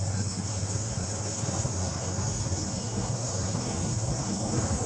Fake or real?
fake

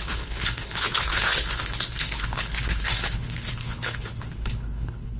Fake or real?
fake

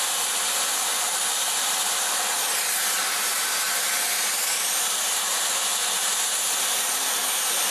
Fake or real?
fake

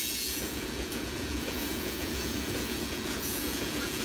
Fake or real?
fake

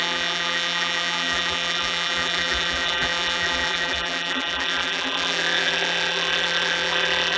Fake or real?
fake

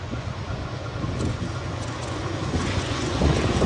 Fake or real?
fake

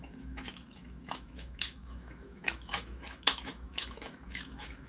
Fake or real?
fake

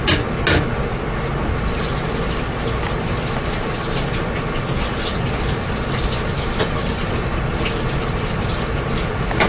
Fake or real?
real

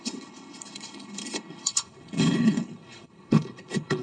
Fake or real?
fake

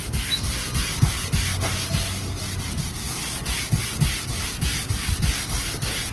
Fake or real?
real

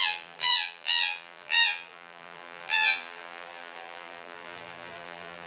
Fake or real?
fake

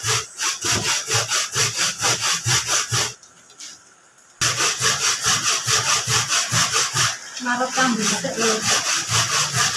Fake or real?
real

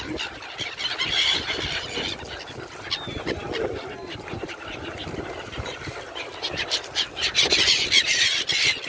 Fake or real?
real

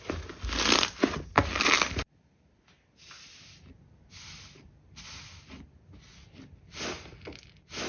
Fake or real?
real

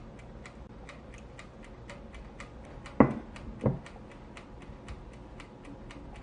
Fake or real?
real